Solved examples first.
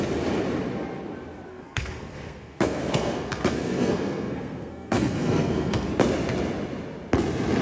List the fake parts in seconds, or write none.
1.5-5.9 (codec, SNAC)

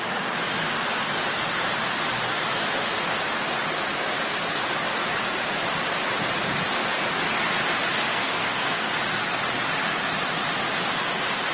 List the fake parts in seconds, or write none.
8.1-8.9 (codec, SNAC)